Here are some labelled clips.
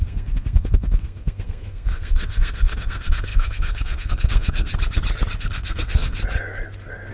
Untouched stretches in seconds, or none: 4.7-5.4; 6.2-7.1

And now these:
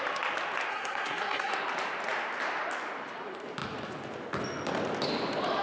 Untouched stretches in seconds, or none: 0.0-0.7; 1.5-5.6

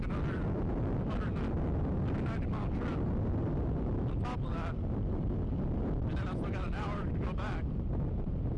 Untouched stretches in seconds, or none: 0.0-8.6

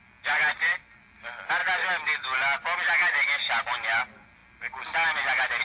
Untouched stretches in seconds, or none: 0.0-5.6

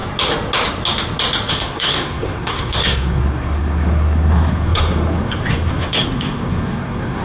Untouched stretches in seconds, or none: 0.0-1.5

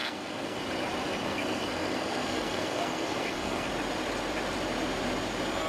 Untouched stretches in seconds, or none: 0.6-1.2; 3.7-5.7